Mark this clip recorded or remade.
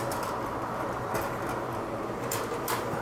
recorded